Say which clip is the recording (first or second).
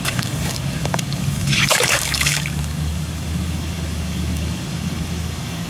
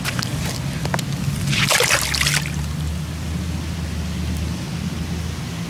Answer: second